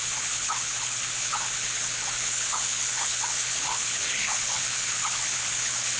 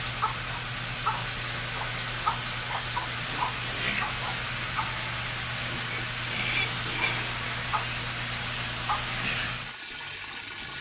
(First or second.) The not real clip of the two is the first